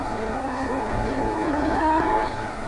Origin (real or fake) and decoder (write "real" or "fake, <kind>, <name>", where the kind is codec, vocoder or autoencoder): fake, codec, SNAC